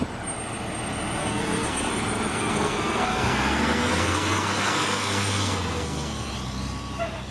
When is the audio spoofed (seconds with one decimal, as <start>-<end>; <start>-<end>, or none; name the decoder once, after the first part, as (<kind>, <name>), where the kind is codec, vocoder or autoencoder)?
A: 1.2-1.9 (codec, SNAC); 2.3-6.3